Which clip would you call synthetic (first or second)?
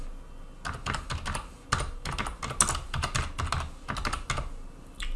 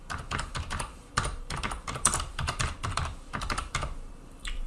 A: second